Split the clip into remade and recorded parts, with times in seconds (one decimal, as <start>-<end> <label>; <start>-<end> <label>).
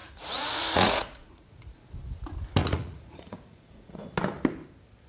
0.0-1.8 remade; 1.8-2.6 recorded; 2.6-4.1 remade; 4.1-5.1 recorded